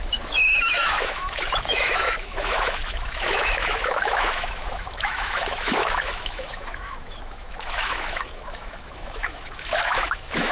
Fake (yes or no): yes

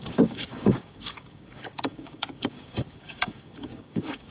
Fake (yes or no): yes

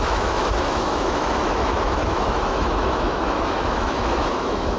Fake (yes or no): yes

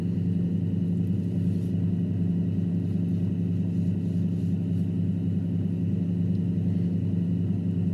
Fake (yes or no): no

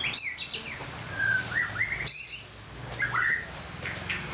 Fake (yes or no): no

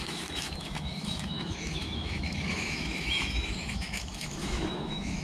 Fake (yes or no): yes